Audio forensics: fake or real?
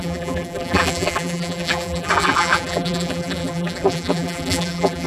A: fake